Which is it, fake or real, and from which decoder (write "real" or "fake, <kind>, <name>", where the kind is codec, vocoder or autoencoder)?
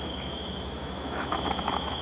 fake, autoencoder, DAC-VAE